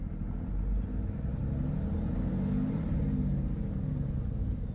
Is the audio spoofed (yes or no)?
no